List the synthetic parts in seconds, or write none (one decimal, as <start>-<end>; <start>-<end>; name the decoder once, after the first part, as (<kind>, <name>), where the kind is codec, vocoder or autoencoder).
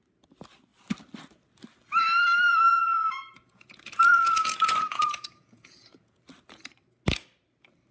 2.5-6.2 (vocoder, Vocos)